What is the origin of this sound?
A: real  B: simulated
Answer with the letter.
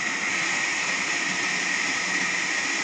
A